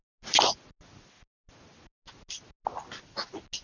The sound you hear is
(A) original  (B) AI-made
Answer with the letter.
A